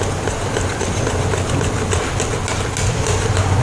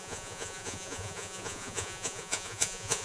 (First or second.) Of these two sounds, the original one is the first